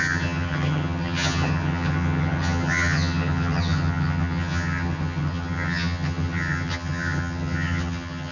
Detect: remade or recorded remade